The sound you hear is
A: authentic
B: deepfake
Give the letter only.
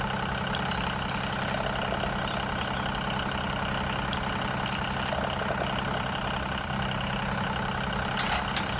A